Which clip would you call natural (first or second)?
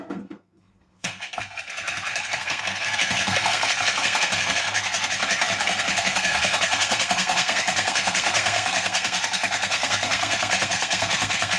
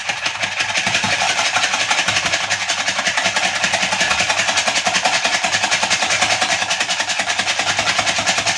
second